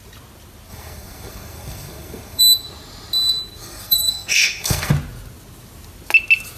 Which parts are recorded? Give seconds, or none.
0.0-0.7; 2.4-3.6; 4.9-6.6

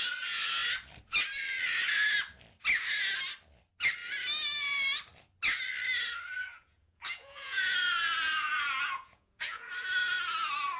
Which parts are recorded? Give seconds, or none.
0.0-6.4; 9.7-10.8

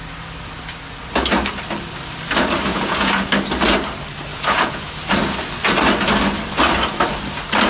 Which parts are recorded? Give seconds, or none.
0.0-2.7; 3.3-4.3; 4.9-7.7

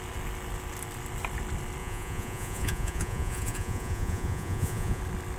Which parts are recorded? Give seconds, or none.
0.0-1.8; 5.0-5.4